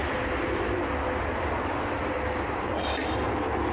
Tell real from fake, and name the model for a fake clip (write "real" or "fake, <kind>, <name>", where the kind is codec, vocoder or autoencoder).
real